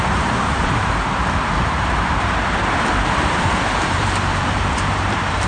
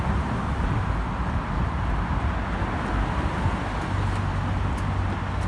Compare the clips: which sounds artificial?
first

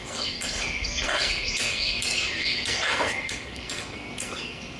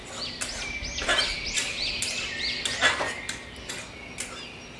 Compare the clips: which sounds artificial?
first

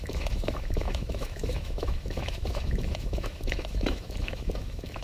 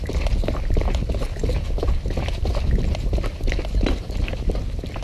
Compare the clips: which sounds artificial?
first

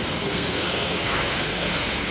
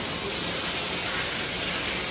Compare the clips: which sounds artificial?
first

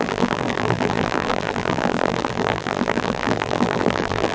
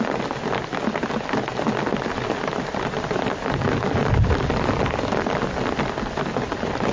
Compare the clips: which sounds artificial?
first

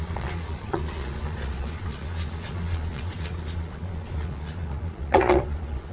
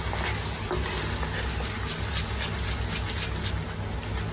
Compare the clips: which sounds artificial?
first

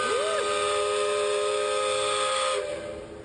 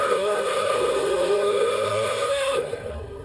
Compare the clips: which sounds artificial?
second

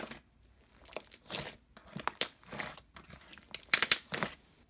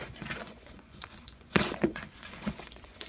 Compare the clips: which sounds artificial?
second